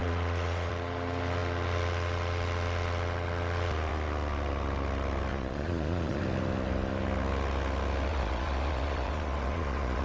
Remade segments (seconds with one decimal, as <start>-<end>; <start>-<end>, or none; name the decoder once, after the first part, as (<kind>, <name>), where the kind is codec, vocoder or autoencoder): 0.0-0.7 (vocoder, Vocos); 5.3-6.2; 8.1-10.0